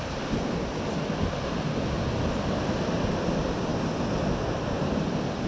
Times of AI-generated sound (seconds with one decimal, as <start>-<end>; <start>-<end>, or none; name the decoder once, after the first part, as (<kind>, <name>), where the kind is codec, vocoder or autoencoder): none

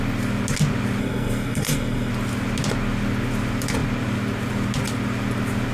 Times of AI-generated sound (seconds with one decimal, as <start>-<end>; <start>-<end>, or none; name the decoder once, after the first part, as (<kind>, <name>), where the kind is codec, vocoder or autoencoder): 1.0-2.1 (codec, SNAC)

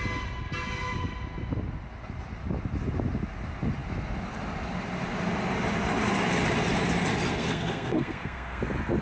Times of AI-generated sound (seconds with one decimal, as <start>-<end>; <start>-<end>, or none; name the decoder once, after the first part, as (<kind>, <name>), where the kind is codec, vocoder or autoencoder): 7.4-8.6 (codec, SNAC)

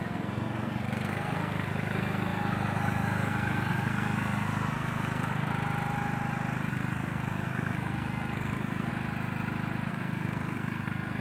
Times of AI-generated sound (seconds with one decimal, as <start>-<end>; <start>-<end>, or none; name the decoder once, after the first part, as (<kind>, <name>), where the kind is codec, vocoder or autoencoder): 0.0-5.5 (codec, SNAC); 6.7-8.9; 9.9-11.2

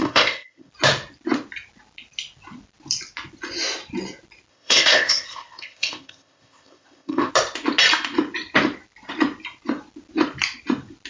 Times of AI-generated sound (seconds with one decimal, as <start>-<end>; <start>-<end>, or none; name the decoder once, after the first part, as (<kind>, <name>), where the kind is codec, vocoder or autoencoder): 0.0-0.7 (codec, ZipCodec); 4.5-7.3

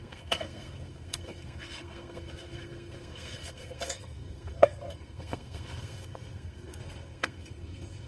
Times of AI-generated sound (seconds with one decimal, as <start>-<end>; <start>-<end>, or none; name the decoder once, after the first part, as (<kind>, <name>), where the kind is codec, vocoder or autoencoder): 0.0-8.1 (codec, SNAC)

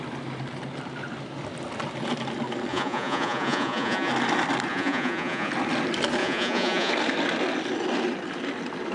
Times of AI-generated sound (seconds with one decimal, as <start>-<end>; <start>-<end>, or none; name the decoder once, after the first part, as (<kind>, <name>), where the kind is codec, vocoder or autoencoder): 2.7-4.1 (vocoder, Vocos); 4.7-5.5; 6.2-6.9